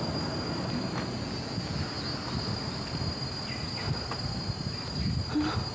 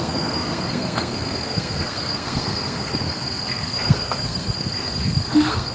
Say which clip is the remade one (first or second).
second